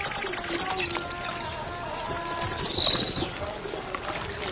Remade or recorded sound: recorded